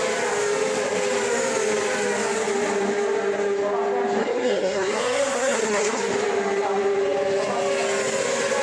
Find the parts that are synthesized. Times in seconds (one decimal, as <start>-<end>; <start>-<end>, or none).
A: 4.2-6.0